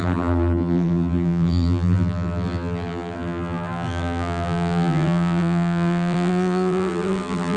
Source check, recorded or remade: remade